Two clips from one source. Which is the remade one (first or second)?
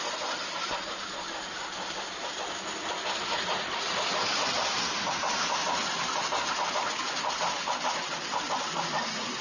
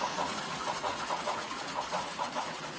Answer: second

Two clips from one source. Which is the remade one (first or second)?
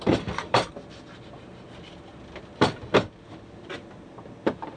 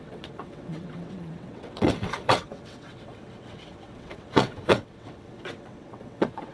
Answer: second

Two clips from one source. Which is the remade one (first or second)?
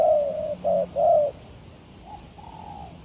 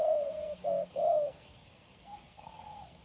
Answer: second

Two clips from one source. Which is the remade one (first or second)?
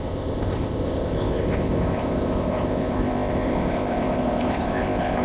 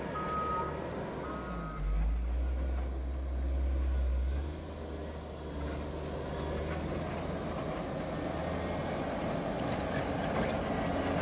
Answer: first